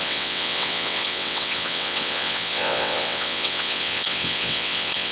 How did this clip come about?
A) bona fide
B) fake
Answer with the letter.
B